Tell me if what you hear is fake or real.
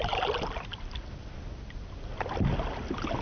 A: real